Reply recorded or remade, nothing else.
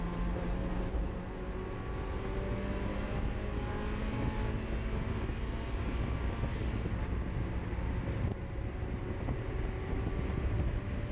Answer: recorded